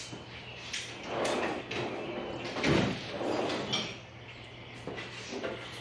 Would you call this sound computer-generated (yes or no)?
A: no